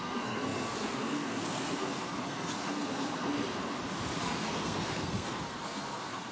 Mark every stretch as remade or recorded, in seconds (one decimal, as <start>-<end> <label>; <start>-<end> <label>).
0.0-3.6 remade; 3.6-4.3 recorded; 4.3-6.3 remade